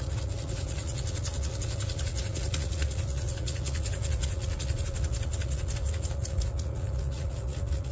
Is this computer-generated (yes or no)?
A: yes